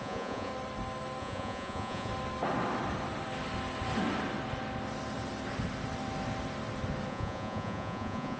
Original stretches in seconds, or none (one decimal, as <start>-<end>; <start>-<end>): 0.5-1.2; 2.1-7.1